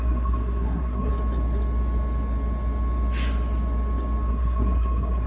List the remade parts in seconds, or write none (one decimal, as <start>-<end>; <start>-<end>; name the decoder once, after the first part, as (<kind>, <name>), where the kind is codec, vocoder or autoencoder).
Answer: 0.0-1.1 (codec, SNAC); 4.3-5.3